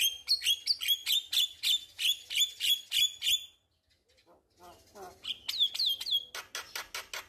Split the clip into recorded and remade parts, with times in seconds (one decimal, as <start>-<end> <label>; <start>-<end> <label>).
0.0-7.3 recorded

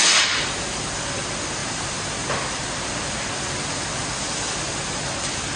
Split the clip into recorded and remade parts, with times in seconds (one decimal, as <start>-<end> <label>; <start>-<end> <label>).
0.0-5.6 recorded

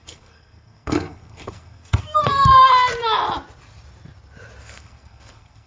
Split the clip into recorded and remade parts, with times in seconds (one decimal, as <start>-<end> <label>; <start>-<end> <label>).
0.0-2.5 remade; 2.5-4.6 recorded; 4.6-5.7 remade